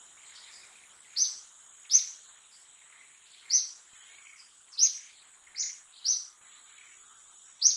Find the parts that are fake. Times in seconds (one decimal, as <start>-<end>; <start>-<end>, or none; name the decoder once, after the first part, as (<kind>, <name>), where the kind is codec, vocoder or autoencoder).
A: none